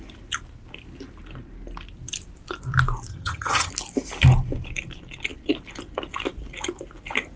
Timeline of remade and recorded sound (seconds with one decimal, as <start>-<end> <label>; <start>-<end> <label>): 0.0-3.1 recorded; 3.1-3.7 remade; 3.7-7.4 recorded